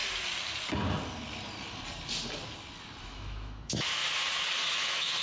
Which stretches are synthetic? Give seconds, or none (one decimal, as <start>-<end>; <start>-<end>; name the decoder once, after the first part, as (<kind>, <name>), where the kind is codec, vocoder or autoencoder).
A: 3.0-4.0 (autoencoder, DAC-VAE); 4.7-5.2